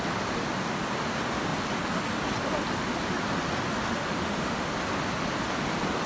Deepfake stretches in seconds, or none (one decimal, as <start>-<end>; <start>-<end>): 4.2-4.7

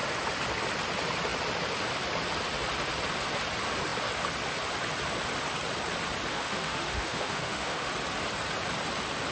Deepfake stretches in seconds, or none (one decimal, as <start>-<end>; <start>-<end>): 6.3-7.9

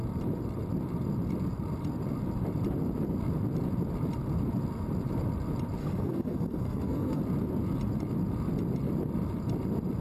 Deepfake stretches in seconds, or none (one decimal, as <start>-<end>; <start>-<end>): 5.8-7.2

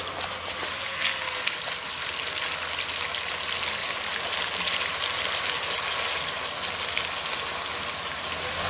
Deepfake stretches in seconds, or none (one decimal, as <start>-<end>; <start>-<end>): none

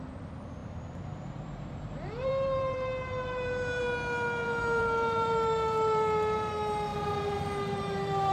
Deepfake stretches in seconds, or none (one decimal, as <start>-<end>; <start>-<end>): 0.6-3.8; 4.4-6.5; 6.9-8.3